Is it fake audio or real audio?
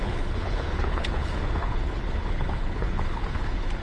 fake